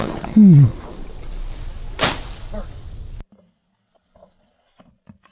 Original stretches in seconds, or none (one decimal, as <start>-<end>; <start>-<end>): 0.7-3.9